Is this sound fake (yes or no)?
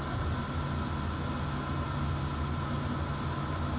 no